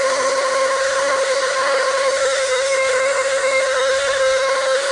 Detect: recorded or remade remade